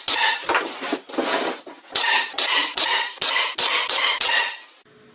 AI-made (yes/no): no